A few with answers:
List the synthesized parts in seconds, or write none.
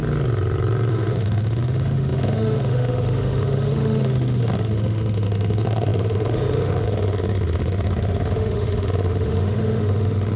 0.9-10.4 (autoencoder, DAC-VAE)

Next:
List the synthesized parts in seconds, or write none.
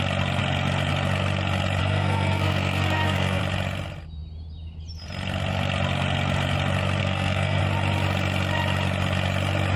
1.8-3.4 (codec, SNAC); 7.0-7.6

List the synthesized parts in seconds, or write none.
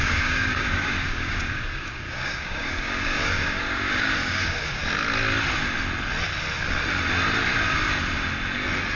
0.0-4.8 (codec, DAC)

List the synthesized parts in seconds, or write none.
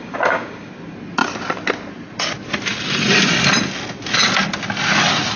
0.0-0.7 (codec, DAC)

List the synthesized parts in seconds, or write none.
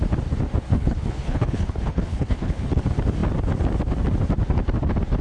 0.7-2.8 (codec, HILCodec)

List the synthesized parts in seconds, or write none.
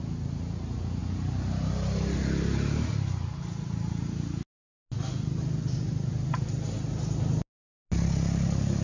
none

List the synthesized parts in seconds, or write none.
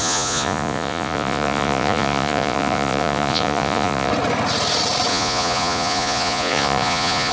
0.0-4.1 (vocoder, Vocos); 5.1-7.3